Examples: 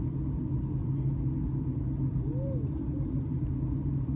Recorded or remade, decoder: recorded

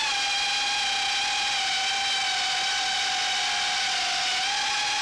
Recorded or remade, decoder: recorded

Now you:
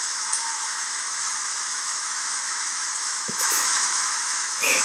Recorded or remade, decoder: remade, autoencoder, DAC-VAE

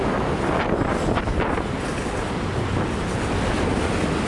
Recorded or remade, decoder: recorded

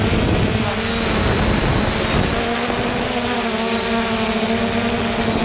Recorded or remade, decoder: recorded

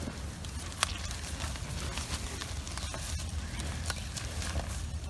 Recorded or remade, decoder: recorded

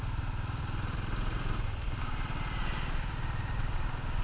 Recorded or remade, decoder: remade, vocoder, BigVGAN v2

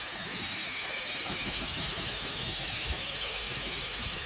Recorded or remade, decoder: remade, autoencoder, DAC-VAE